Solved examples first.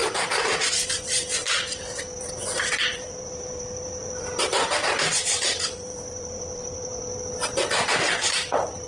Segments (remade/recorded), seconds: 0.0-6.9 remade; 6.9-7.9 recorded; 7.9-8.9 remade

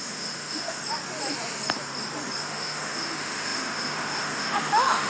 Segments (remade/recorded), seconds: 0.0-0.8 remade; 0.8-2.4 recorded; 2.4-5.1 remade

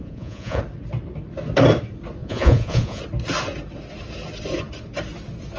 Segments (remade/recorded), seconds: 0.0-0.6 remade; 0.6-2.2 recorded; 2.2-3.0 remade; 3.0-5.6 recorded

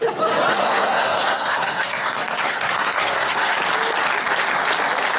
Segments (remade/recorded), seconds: 0.0-0.5 recorded; 0.5-3.6 remade; 3.6-5.2 recorded

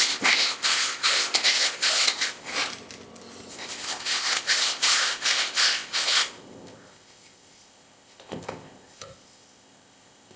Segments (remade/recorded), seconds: 0.0-2.5 remade; 2.5-3.5 recorded; 3.5-10.4 remade

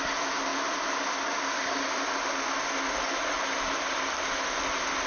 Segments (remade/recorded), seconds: 0.0-5.1 recorded